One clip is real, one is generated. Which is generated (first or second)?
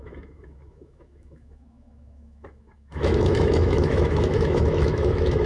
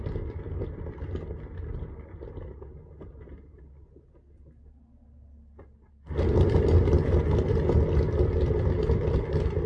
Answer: first